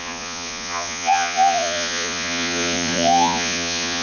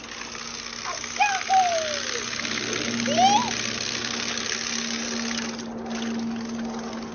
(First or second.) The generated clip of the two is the first